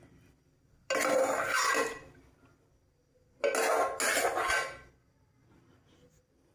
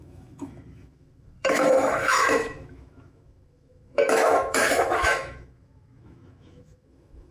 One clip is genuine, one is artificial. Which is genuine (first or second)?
first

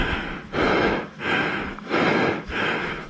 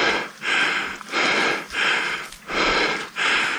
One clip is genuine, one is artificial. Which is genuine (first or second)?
second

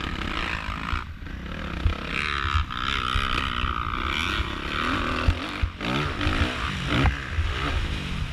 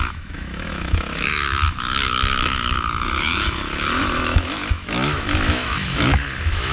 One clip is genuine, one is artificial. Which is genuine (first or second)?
first